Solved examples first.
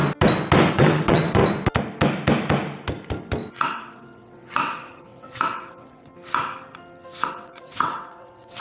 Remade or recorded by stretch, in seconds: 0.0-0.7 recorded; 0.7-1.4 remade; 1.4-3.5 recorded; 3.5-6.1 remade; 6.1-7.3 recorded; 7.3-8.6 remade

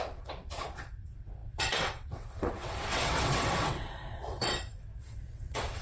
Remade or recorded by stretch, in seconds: 0.0-5.8 remade

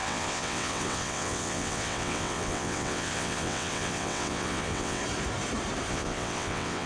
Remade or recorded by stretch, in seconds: 0.0-5.0 remade; 5.0-5.9 recorded; 5.9-6.9 remade

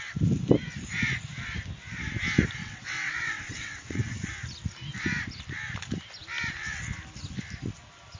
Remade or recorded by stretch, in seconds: 0.0-2.6 recorded; 2.6-4.3 remade; 4.3-8.2 recorded

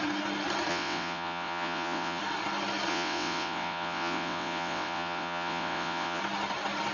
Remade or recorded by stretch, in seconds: 0.0-0.7 recorded; 0.7-2.2 remade; 2.2-2.9 recorded; 2.9-6.2 remade; 6.2-6.9 recorded